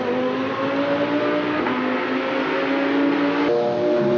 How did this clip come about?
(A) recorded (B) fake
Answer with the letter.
A